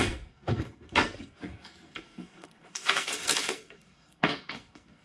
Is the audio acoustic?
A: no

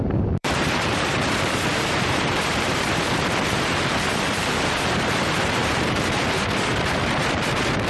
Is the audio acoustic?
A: no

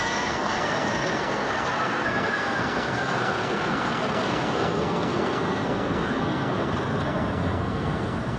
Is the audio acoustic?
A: no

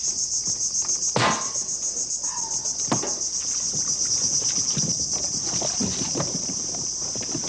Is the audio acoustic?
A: yes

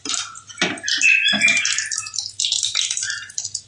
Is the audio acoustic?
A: yes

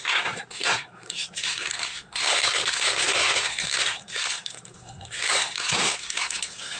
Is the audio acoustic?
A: no